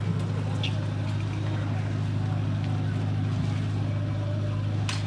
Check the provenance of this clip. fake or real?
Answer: real